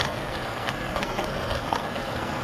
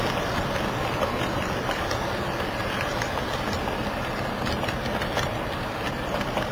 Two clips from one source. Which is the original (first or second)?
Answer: second